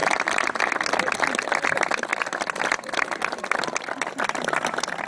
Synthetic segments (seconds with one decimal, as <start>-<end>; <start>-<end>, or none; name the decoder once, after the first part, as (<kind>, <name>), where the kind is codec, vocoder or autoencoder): 0.0-0.6 (vocoder, BigVGAN v2); 2.1-3.7